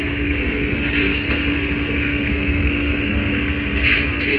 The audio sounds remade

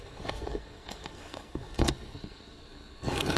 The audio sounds remade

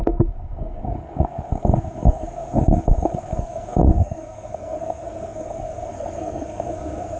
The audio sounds remade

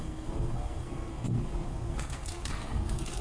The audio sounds remade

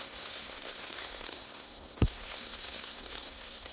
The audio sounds remade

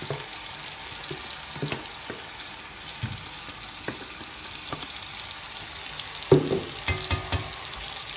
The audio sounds recorded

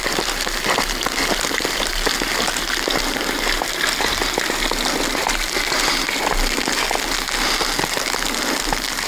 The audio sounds recorded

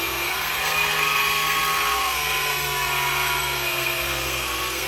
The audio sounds remade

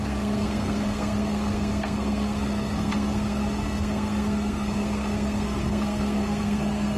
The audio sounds remade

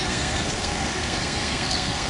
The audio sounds remade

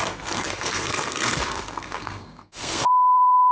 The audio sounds remade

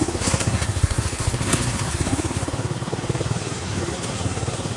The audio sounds remade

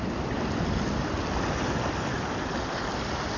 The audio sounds recorded